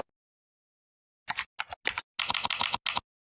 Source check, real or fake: real